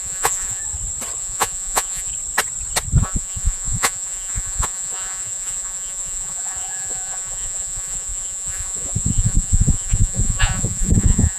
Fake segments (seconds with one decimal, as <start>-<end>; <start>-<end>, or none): 0.0-0.6; 1.2-2.1; 3.0-11.4